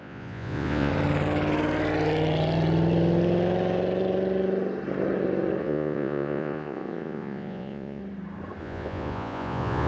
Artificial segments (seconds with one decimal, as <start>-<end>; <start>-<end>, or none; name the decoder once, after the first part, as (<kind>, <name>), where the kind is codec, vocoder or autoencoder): 0.0-0.9 (vocoder, Vocos); 5.6-8.0; 8.6-9.9